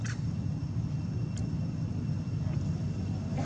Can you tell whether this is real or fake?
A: real